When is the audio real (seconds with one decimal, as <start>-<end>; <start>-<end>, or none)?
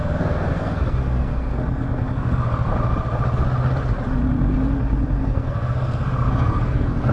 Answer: 2.7-5.2